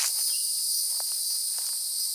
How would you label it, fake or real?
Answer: real